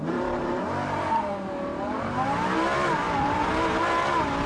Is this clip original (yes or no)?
no